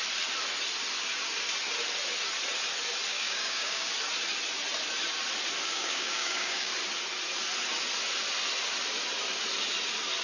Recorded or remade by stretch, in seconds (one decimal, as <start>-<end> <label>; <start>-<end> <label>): 0.0-3.1 recorded; 3.1-3.9 remade; 3.9-5.6 recorded; 5.6-6.7 remade; 6.7-10.2 recorded